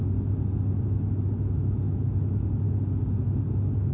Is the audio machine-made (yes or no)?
no